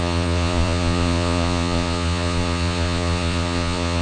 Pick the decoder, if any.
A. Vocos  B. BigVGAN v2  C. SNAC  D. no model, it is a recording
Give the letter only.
A